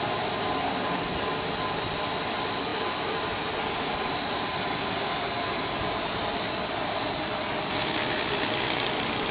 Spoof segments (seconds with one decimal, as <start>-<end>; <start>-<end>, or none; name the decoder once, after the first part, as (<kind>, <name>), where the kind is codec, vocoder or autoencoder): none